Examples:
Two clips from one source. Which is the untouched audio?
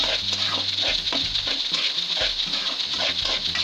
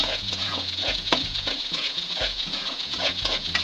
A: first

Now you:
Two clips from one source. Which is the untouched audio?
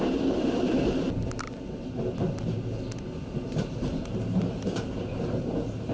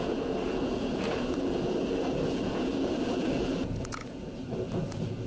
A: first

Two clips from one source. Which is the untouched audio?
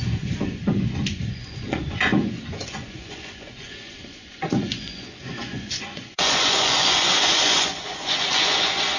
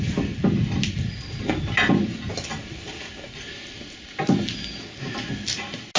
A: second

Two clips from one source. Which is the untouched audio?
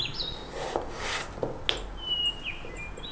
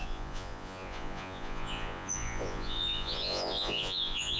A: first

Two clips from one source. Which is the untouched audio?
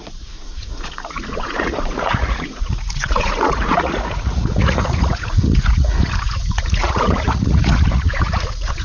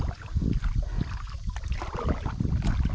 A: second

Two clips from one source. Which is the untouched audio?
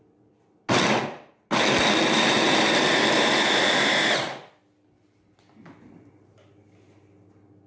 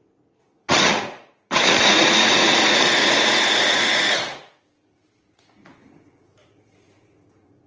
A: first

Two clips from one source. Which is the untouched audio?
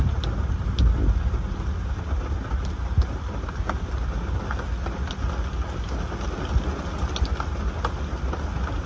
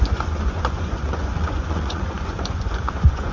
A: first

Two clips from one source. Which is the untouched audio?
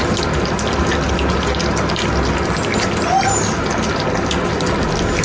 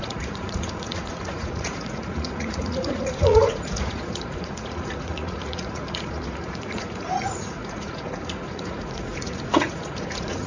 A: first